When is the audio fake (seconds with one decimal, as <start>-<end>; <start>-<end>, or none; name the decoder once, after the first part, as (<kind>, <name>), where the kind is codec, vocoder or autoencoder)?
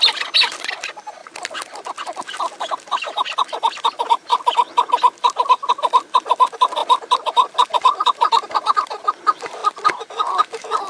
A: 1.2-2.0 (vocoder, BigVGAN v2); 6.8-8.5; 9.6-10.9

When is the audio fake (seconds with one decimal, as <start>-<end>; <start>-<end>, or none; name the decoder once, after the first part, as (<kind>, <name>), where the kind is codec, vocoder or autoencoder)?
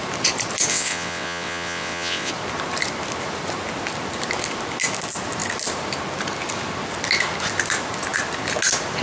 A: 0.7-2.3 (vocoder, WaveNeXt)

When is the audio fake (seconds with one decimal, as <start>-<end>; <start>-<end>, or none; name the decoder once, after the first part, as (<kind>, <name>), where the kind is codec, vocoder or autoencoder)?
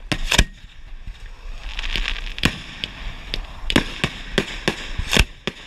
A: none